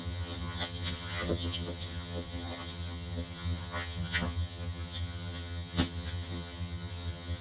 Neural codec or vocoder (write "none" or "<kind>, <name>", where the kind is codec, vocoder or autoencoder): vocoder, HiFi-GAN